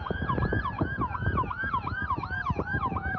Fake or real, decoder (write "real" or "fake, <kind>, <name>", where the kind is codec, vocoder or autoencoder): fake, vocoder, Vocos